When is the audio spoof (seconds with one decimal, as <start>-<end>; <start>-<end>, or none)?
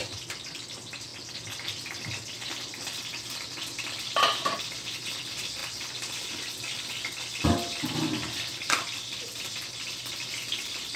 none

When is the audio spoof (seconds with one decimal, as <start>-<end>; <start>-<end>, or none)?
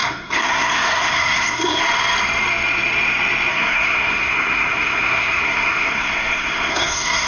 0.0-1.8; 3.5-7.3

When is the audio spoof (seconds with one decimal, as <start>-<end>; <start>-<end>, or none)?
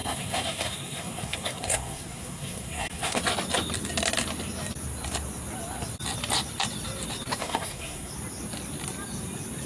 0.0-3.2; 7.4-8.1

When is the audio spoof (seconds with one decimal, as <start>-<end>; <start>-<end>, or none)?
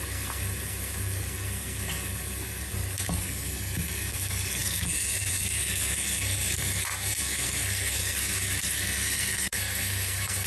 0.0-10.5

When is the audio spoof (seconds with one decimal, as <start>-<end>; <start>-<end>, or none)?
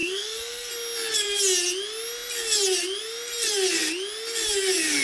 0.0-0.7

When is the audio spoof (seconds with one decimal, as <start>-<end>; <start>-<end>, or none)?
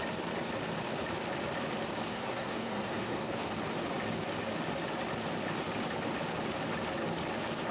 2.1-3.3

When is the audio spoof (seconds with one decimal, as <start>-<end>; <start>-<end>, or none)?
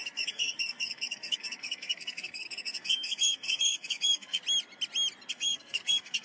0.0-4.4; 5.3-6.2